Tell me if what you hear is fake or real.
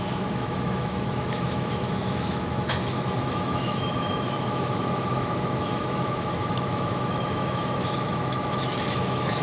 fake